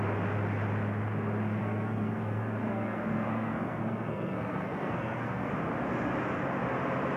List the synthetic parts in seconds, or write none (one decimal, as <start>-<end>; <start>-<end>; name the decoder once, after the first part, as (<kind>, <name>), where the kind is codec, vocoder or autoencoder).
1.6-5.5 (codec, SNAC)